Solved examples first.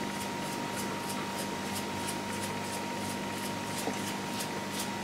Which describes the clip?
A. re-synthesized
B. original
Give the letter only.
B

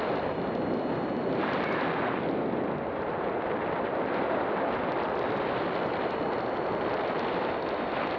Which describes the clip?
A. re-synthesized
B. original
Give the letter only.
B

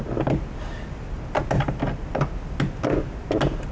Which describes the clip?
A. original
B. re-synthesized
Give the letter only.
A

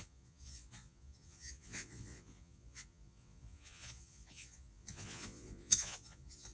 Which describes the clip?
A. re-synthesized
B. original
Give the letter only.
A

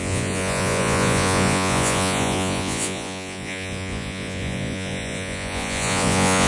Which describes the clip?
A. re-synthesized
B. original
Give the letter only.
A